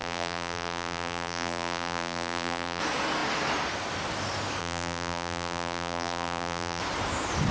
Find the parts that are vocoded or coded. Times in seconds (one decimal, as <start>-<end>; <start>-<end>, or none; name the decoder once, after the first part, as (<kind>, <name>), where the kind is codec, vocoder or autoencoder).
0.0-2.8 (vocoder, BigVGAN v2); 4.6-6.8